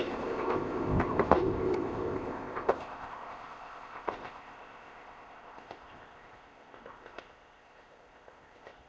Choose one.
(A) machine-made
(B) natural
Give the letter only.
A